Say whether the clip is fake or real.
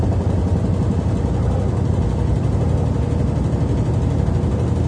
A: real